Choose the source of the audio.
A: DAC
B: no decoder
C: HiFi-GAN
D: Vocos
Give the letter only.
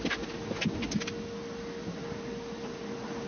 B